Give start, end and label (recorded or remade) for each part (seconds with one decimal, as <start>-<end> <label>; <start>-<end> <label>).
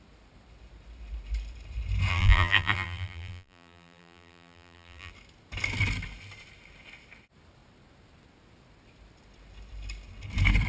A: 0.0-2.1 recorded; 2.1-5.1 remade; 5.1-10.7 recorded